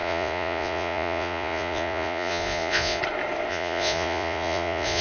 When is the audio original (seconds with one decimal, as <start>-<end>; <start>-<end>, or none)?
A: 3.0-3.5